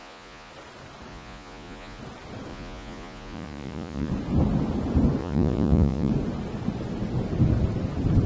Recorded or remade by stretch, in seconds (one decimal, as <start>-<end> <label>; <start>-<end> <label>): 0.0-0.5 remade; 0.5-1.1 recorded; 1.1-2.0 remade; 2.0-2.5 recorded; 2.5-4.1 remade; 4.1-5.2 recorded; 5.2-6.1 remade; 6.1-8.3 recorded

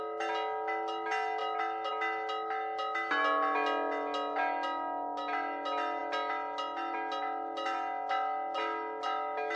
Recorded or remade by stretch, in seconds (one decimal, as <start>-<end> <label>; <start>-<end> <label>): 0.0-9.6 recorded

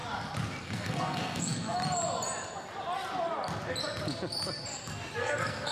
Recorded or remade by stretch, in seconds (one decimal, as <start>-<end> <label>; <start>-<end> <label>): 0.0-0.6 recorded; 0.6-1.8 remade; 1.8-5.2 recorded; 5.2-5.7 remade